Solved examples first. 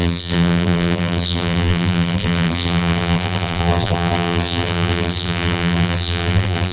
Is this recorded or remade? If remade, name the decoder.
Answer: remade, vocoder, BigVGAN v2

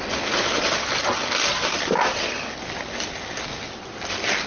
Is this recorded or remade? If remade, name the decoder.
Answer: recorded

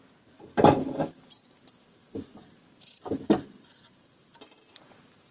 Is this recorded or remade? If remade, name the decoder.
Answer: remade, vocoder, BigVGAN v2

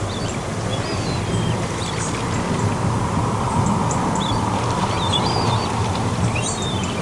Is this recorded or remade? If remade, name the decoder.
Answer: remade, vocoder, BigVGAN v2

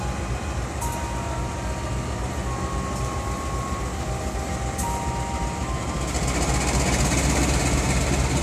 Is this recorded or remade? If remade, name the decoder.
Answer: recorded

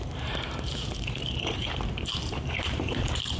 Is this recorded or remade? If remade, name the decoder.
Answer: remade, vocoder, BigVGAN v2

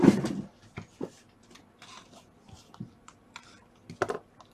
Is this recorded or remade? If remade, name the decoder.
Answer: recorded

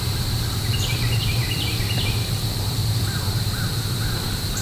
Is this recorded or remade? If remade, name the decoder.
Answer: remade, vocoder, BigVGAN v2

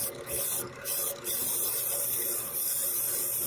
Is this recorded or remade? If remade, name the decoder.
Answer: recorded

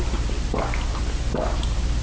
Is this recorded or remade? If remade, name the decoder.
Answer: recorded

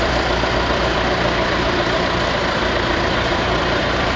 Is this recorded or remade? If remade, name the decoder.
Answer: remade, vocoder, BigVGAN v2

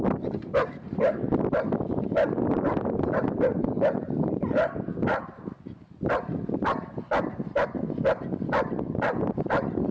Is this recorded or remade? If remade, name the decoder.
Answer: recorded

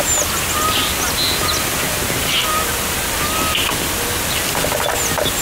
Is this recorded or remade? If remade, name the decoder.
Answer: recorded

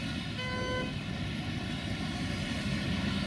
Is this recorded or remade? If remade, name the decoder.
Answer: recorded